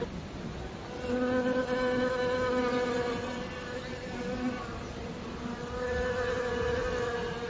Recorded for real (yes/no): yes